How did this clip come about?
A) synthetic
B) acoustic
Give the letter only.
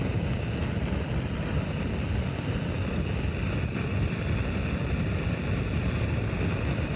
B